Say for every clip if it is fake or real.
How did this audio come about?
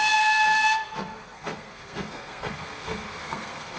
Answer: fake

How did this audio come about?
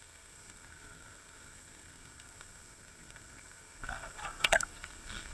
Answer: fake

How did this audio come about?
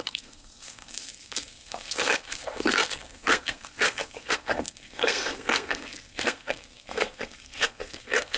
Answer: fake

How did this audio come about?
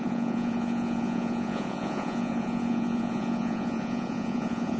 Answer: fake